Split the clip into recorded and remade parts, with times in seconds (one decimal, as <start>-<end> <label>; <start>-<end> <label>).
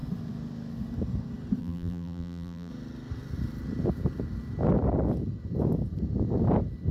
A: 0.0-1.6 recorded; 1.6-2.7 remade; 2.7-6.9 recorded